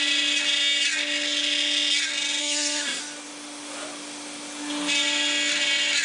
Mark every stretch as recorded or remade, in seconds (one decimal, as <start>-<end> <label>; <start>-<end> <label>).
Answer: 0.0-2.4 recorded; 2.4-3.0 remade; 3.0-6.0 recorded

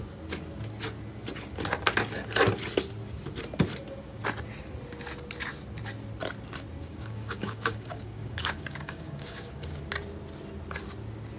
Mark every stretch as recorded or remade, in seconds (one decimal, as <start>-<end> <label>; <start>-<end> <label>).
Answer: 0.0-6.8 recorded; 6.8-9.8 remade; 9.8-11.4 recorded